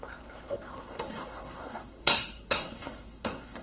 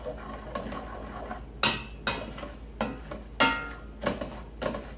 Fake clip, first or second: first